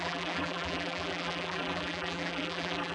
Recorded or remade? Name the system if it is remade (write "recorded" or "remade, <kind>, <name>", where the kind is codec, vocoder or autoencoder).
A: remade, vocoder, BigVGAN v2